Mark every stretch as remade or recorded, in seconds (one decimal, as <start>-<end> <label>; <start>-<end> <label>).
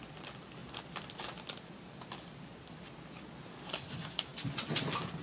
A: 0.0-5.2 recorded